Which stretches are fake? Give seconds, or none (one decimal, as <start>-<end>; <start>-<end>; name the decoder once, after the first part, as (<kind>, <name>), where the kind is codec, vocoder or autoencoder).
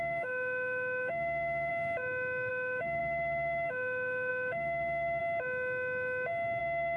0.0-1.7 (autoencoder, DAC-VAE); 2.5-5.2; 6.6-7.0